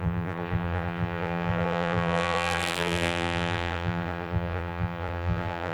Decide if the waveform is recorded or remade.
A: remade